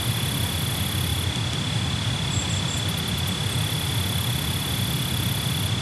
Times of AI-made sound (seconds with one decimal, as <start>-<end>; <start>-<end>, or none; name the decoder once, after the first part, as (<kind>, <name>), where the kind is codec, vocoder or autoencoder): none